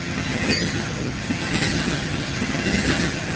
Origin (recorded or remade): remade